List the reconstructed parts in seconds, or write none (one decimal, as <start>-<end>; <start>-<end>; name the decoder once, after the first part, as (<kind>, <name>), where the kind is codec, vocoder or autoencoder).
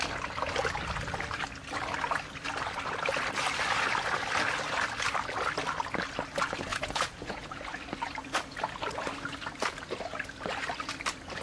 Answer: 6.7-7.6 (vocoder, Vocos)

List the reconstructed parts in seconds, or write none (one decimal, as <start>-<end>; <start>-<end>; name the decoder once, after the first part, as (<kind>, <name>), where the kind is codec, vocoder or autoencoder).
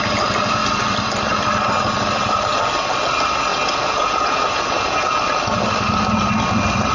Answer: 3.5-5.2 (vocoder, Vocos)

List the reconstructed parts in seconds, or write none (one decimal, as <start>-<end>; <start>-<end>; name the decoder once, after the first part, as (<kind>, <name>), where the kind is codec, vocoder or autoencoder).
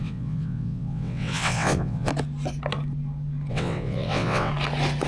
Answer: 0.0-2.1 (vocoder, WaveNeXt); 3.5-4.5